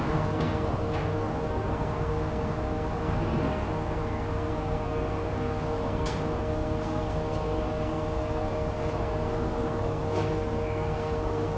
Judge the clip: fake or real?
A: fake